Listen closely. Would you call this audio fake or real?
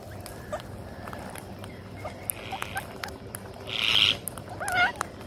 real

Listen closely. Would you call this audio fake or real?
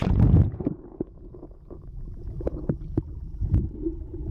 fake